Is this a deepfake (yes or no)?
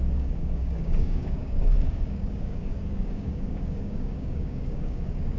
yes